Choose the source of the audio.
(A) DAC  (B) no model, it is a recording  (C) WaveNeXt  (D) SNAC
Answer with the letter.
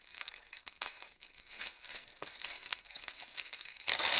D